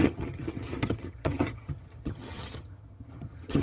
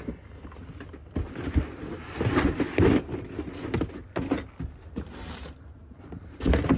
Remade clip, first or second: first